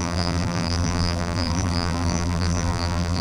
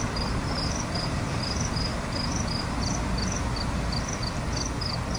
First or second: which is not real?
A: first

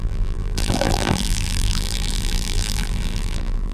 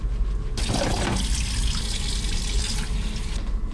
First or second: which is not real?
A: first